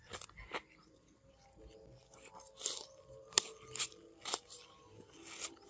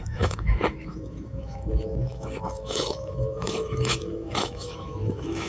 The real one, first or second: first